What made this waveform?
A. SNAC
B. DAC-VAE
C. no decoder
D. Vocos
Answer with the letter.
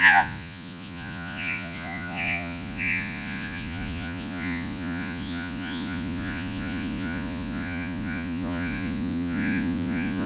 D